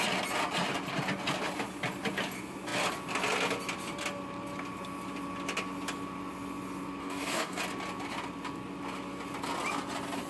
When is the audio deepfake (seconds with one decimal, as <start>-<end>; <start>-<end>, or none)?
7.0-7.6